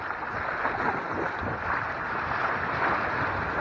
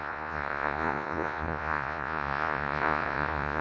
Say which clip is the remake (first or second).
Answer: second